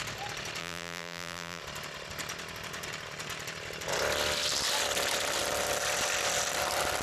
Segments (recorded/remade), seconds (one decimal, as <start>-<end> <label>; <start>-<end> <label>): 0.0-0.6 recorded; 0.6-1.6 remade; 1.6-7.0 recorded